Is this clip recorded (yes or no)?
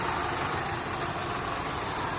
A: yes